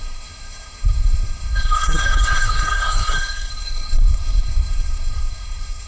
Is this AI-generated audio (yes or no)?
yes